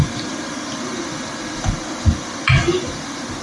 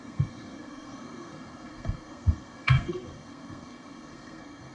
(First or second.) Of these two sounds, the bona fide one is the first